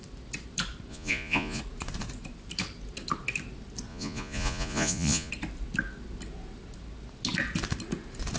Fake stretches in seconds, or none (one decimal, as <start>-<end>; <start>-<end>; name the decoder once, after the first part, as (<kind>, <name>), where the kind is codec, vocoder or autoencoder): 0.9-1.6 (vocoder, Vocos); 3.9-5.3